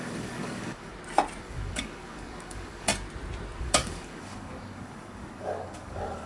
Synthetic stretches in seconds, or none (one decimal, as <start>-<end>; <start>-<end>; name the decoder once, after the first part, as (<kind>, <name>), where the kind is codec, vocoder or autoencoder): 0.0-0.9 (codec, DAC); 1.4-2.9; 3.6-6.3